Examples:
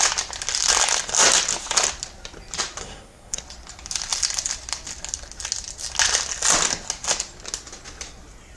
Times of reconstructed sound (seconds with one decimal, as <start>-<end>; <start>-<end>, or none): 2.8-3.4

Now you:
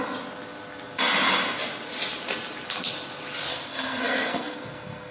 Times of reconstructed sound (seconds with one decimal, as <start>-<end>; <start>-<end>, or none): 3.5-5.1

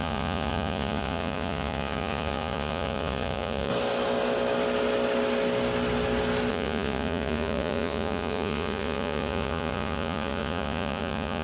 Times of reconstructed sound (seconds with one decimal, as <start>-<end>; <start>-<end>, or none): 0.0-3.7; 6.5-11.4

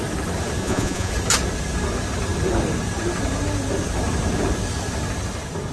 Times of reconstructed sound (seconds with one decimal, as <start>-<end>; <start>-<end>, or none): 0.6-1.1